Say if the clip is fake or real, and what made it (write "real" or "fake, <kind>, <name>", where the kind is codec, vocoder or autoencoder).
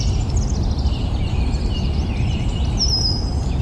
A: real